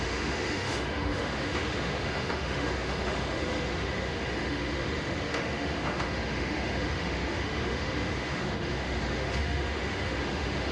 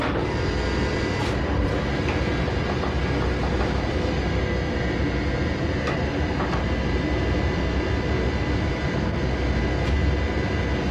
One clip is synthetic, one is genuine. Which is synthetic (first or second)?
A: first